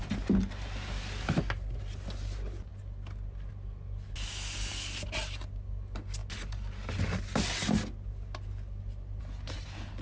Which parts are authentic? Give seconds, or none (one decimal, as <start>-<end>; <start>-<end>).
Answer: 0.0-10.0